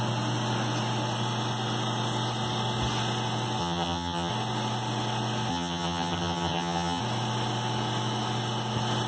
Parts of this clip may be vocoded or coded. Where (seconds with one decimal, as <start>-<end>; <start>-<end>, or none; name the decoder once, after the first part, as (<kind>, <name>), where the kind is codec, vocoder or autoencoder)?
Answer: 3.6-4.3 (vocoder, HiFi-GAN); 5.5-7.0